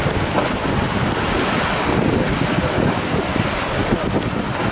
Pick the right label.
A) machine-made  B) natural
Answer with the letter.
B